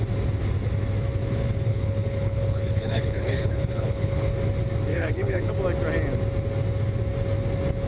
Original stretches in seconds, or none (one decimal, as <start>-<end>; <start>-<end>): 0.0-1.7; 4.3-4.9; 5.5-7.9

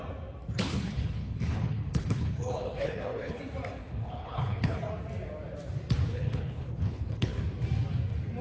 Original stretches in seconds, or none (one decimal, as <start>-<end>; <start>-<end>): 0.0-0.7; 3.4-3.8; 4.9-6.1; 7.4-8.4

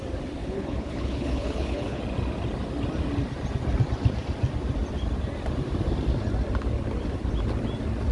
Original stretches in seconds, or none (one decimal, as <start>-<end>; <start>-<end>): 0.0-0.4; 2.0-8.1

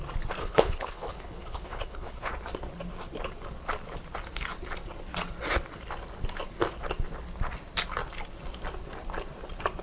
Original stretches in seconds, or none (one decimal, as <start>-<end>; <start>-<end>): 0.0-0.4; 2.3-9.8

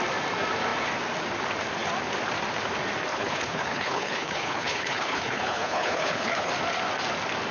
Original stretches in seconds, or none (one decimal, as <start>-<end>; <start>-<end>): 0.0-3.1; 6.5-7.5